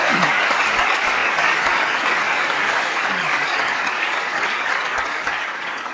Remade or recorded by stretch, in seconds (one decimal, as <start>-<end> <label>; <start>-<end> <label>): 0.0-5.9 remade